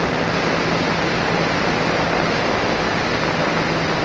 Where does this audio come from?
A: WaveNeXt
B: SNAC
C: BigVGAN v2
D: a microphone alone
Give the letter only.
D